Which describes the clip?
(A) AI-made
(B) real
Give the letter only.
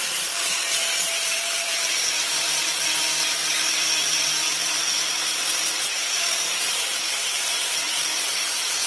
A